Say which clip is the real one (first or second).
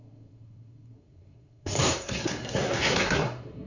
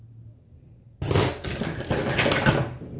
second